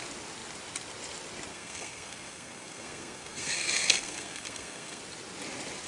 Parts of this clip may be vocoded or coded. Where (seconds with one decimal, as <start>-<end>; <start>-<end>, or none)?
1.5-5.0